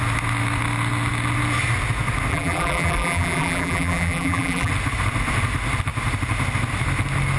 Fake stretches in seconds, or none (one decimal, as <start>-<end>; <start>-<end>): 2.3-4.7